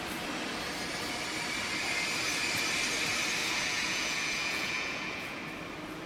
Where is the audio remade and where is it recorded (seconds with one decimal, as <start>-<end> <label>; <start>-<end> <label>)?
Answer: 0.0-3.4 recorded; 3.4-5.4 remade; 5.4-6.1 recorded